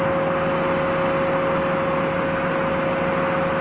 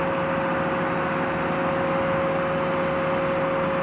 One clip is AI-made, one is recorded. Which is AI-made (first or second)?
second